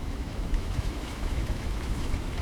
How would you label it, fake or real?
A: fake